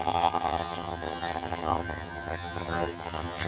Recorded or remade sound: remade